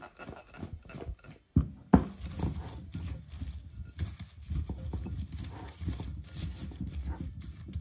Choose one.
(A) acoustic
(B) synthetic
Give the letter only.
A